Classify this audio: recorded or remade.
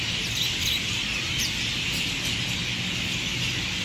recorded